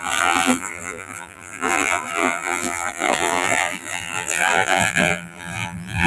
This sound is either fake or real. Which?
fake